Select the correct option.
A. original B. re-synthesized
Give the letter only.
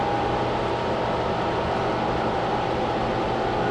A